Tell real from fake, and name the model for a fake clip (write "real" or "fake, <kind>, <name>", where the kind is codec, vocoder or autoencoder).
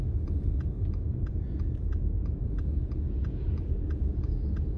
fake, vocoder, Vocos